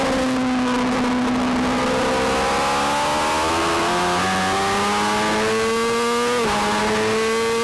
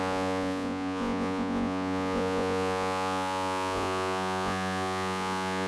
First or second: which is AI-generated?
second